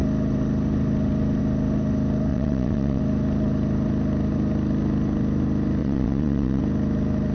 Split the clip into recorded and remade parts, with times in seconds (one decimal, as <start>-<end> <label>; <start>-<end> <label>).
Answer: 0.0-2.3 recorded; 2.3-3.0 remade; 3.0-5.8 recorded; 5.8-6.6 remade; 6.6-7.3 recorded